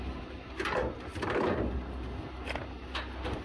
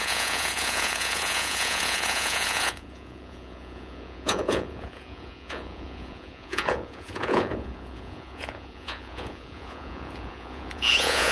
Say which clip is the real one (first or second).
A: first